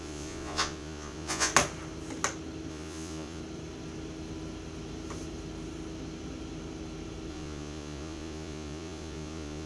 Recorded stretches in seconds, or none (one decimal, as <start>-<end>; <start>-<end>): 1.5-2.7; 3.4-7.3